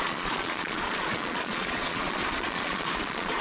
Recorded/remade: remade